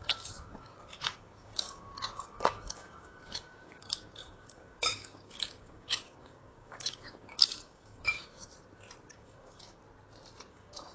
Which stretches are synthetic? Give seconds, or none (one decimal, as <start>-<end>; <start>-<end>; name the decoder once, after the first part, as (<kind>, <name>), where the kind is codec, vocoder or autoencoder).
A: 0.0-8.5 (codec, DAC); 9.1-9.8; 10.5-10.9